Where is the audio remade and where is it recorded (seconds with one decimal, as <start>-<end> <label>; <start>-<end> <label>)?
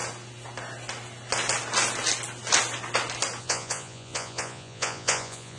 0.0-3.4 recorded; 3.4-5.6 remade